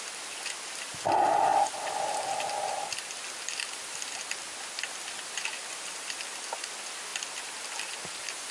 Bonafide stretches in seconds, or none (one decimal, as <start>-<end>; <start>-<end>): 0.0-8.5